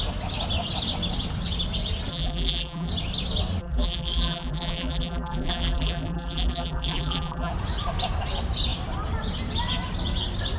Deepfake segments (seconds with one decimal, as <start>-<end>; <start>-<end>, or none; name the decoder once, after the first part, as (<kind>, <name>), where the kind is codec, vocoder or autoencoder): 2.1-2.9 (vocoder, BigVGAN v2); 3.6-7.5